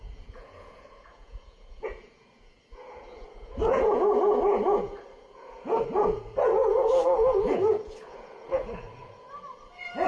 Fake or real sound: fake